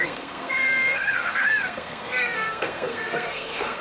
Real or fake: fake